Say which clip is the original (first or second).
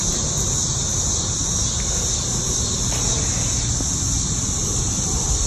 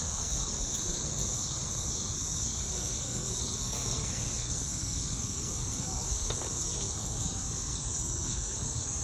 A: first